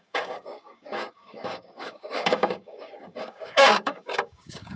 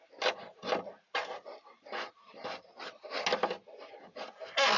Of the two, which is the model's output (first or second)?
first